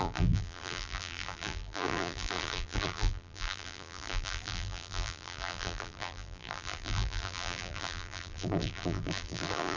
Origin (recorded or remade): remade